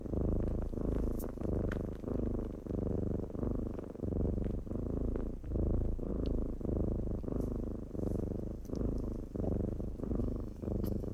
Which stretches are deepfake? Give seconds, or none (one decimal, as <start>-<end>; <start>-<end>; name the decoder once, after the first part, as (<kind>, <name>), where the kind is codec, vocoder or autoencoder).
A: 10.2-11.1 (codec, DAC)